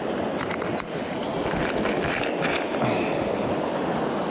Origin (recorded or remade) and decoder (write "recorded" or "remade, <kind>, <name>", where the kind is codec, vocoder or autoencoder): recorded